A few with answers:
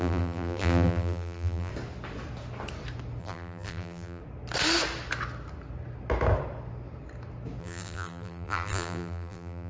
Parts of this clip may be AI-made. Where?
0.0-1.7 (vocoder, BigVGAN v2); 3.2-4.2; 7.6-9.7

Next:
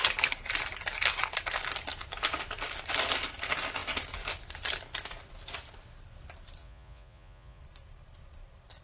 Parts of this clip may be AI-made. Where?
6.6-7.6 (vocoder, Vocos)